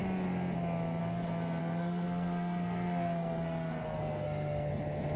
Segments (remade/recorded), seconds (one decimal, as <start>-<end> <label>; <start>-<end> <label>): 0.0-1.6 recorded; 1.6-4.7 remade; 4.7-5.2 recorded